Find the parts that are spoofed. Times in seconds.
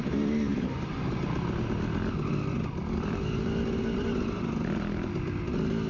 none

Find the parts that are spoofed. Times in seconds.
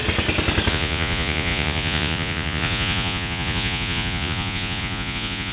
0.7-5.5 (vocoder, Vocos)